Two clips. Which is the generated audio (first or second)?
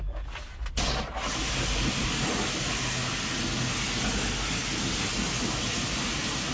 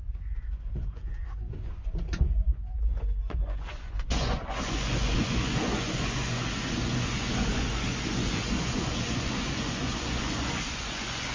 second